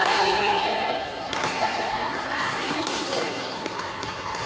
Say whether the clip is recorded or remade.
remade